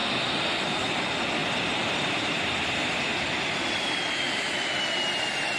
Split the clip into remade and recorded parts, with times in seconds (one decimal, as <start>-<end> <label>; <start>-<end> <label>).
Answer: 0.0-1.4 recorded; 1.4-4.8 remade; 4.8-5.6 recorded

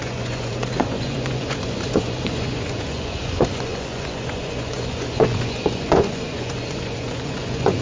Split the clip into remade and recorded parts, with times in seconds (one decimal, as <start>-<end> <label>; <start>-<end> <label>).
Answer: 0.0-7.8 remade

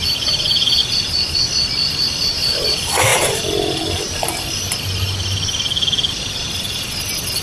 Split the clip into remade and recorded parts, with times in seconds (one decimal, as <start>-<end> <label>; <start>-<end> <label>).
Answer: 0.0-7.4 recorded

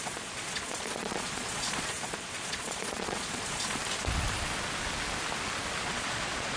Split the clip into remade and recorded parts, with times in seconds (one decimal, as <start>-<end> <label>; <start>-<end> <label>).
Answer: 0.0-3.8 remade; 3.8-5.8 recorded; 5.8-6.6 remade

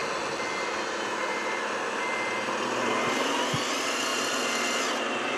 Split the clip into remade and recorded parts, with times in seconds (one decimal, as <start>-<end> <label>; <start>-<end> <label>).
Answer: 0.0-5.4 recorded